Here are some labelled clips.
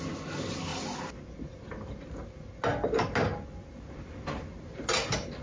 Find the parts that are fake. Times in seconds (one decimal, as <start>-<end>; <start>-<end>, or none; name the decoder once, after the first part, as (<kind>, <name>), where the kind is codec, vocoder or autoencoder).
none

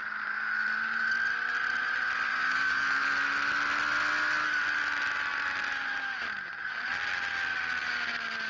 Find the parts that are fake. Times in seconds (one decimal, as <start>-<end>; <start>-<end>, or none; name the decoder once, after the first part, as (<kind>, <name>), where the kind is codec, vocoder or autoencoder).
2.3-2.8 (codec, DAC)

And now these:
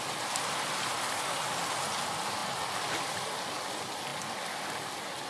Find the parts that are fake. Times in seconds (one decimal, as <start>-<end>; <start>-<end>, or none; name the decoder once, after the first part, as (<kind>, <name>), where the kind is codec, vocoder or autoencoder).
none

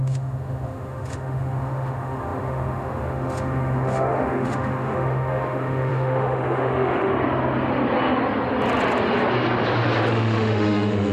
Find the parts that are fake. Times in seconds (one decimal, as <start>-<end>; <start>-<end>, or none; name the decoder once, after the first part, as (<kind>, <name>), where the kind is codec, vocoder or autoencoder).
0.0-7.1 (autoencoder, DAC-VAE); 10.1-11.1

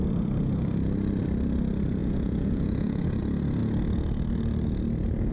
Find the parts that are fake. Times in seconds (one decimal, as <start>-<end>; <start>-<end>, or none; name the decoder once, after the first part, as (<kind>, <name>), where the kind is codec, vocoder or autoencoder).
2.0-3.2 (vocoder, Vocos)

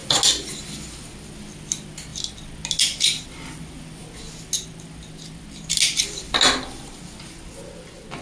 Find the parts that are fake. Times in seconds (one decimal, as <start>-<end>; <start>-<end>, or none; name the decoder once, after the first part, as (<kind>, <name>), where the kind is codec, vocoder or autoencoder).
none